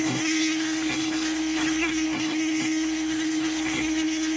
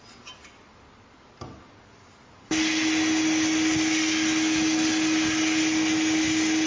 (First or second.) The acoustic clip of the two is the second